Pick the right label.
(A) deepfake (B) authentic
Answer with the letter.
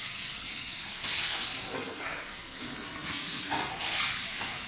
A